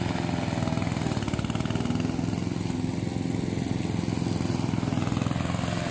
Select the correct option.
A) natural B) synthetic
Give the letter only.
A